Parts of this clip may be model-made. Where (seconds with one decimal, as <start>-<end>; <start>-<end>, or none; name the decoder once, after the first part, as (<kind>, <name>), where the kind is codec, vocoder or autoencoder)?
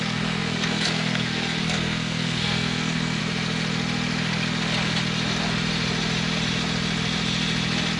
0.0-3.2 (codec, SNAC)